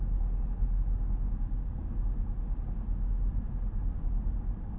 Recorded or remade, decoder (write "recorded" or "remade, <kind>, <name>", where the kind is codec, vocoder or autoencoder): recorded